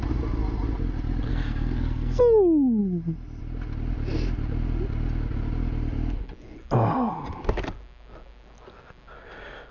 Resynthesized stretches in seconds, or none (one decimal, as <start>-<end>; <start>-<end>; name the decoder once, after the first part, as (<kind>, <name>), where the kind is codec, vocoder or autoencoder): 1.3-2.2 (codec, SNAC)